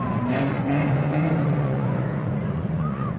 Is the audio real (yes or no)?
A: no